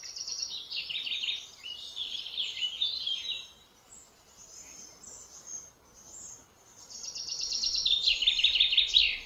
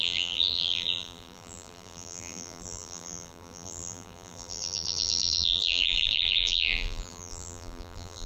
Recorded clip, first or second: first